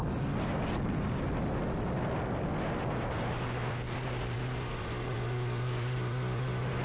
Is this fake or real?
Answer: real